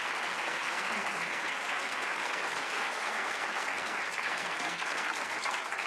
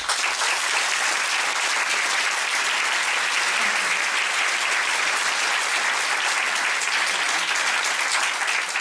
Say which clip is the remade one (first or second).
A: first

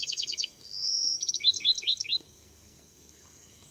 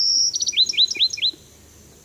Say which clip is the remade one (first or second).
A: first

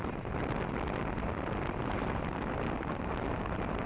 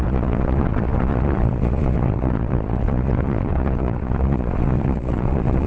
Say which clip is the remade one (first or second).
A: second